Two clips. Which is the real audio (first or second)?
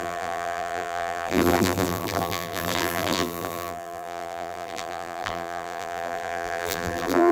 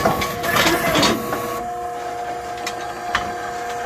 second